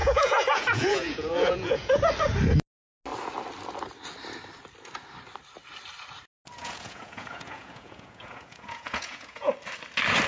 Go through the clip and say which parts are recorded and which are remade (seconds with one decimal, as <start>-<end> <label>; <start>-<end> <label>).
0.0-2.0 remade; 2.0-6.6 recorded; 6.6-9.5 remade; 9.5-10.3 recorded